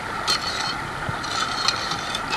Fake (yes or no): no